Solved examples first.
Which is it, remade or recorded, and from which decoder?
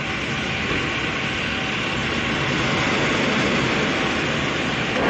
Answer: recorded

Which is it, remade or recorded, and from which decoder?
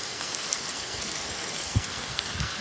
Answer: remade, codec, SNAC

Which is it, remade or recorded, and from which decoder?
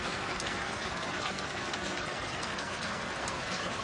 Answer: remade, codec, SNAC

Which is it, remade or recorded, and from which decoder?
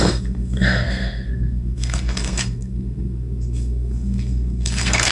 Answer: remade, codec, SNAC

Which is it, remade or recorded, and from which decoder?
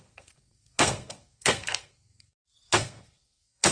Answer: remade, codec, SNAC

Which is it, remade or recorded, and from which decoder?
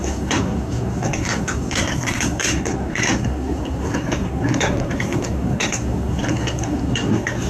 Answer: remade, codec, SNAC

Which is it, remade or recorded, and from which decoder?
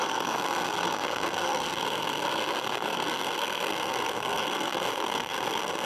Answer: remade, codec, SNAC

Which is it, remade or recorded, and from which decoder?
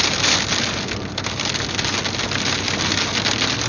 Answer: recorded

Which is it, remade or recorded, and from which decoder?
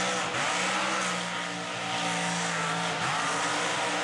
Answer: recorded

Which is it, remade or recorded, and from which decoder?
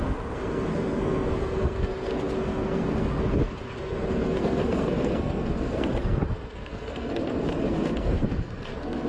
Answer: remade, codec, SNAC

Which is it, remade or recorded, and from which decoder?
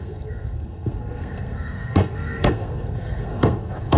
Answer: remade, codec, SNAC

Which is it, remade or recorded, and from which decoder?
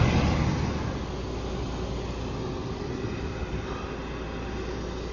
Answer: recorded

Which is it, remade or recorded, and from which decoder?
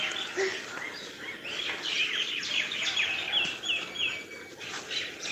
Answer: recorded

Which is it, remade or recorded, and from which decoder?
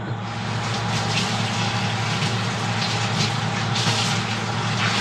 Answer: recorded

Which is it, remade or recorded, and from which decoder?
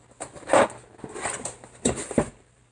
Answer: recorded